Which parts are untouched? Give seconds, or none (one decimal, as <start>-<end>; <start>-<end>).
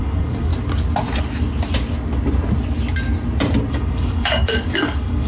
0.5-3.7